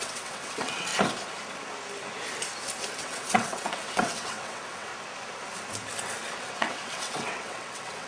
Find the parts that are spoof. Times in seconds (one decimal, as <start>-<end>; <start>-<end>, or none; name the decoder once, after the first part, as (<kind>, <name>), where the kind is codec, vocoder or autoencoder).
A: 0.0-0.9 (vocoder, WaveNeXt); 3.0-4.9; 6.4-8.1